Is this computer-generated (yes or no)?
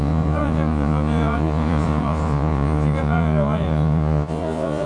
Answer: yes